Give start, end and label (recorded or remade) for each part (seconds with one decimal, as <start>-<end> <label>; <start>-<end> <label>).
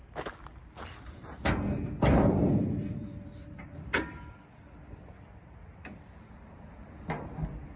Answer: 0.0-1.9 recorded; 1.9-7.8 remade